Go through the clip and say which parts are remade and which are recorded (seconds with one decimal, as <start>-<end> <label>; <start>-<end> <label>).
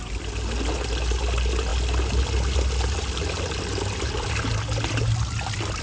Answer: 0.0-5.8 recorded